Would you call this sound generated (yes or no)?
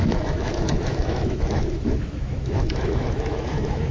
yes